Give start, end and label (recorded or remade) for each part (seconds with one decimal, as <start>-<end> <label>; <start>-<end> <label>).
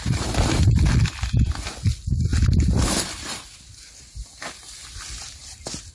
0.0-5.9 recorded